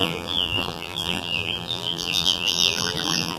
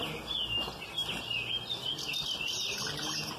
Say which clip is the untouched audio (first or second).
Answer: second